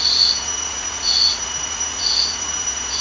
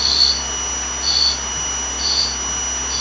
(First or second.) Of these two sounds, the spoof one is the first